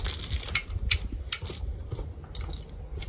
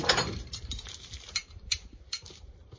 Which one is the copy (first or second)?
second